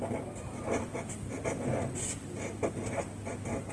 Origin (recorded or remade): recorded